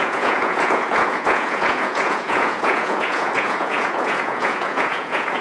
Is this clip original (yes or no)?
no